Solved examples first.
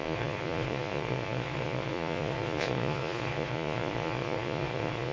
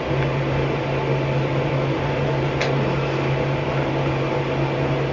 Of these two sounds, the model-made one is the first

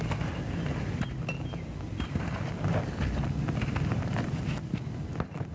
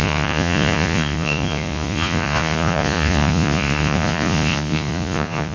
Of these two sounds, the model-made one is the second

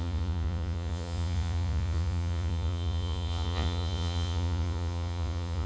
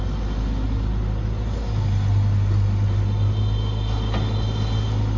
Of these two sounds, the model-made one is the first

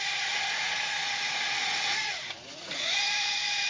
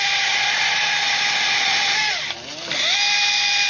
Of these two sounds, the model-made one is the first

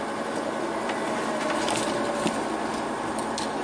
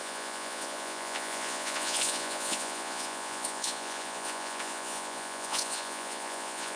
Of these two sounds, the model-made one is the second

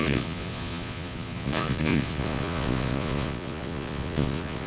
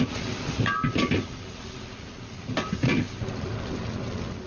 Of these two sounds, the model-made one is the first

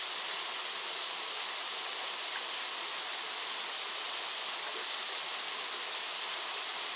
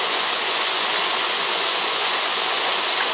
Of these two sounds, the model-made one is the second